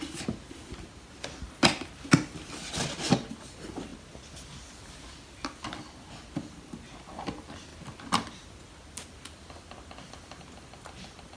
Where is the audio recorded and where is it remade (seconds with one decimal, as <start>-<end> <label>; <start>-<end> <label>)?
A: 0.0-11.4 recorded